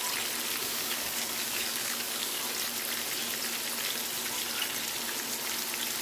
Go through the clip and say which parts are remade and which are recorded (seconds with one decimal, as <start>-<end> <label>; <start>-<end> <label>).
0.0-0.6 recorded; 0.6-2.4 remade; 2.4-6.0 recorded